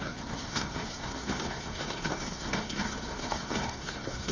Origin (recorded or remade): remade